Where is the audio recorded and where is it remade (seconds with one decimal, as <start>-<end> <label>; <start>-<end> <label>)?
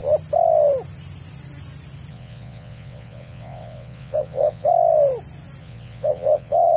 0.0-2.1 recorded; 2.1-4.7 remade; 4.7-5.6 recorded; 5.6-6.8 remade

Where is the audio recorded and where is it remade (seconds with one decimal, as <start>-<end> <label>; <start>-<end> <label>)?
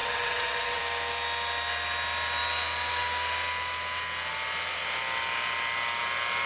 0.0-0.8 remade; 0.8-6.5 recorded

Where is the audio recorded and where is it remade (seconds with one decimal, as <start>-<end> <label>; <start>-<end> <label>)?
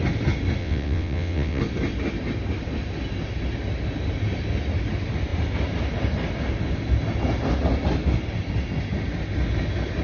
0.0-0.6 recorded; 0.6-1.6 remade; 1.6-10.0 recorded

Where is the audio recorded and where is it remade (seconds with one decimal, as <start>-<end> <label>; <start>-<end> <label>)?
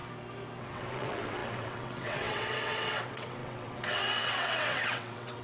0.0-0.6 recorded; 0.6-5.4 remade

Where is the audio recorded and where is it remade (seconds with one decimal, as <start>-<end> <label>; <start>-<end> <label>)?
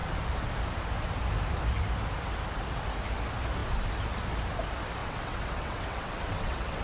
0.0-5.0 recorded; 5.0-6.8 remade